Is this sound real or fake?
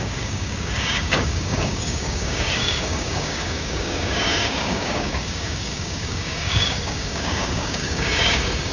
fake